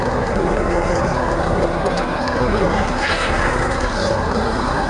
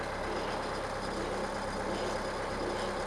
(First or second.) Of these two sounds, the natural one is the second